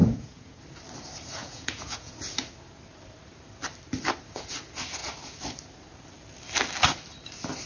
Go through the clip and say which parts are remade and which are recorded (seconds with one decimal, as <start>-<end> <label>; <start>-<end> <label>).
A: 0.0-0.6 remade; 0.6-1.4 recorded; 1.4-2.1 remade; 2.1-7.7 recorded